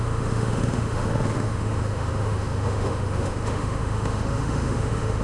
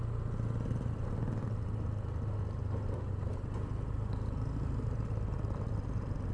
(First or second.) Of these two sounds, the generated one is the first